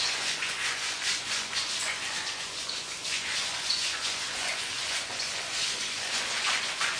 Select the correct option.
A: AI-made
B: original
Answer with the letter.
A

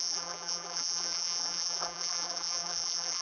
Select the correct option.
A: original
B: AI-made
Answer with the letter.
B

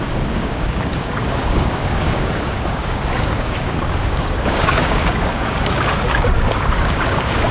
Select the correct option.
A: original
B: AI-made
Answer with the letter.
B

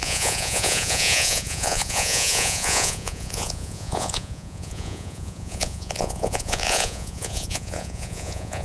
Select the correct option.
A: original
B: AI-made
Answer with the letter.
B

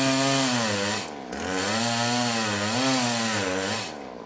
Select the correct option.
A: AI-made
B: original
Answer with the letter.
B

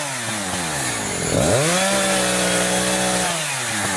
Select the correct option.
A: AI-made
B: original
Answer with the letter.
B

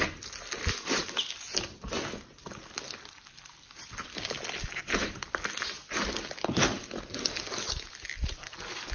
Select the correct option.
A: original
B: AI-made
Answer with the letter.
A